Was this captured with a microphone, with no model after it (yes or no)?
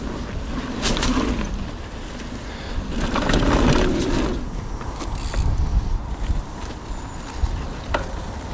yes